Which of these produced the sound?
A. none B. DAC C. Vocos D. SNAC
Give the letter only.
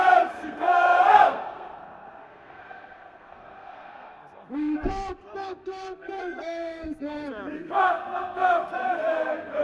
D